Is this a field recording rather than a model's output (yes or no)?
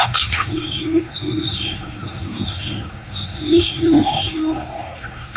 no